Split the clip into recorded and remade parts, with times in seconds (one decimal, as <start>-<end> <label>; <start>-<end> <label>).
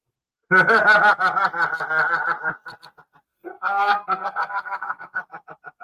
0.0-3.3 recorded; 3.3-5.2 remade; 5.2-5.8 recorded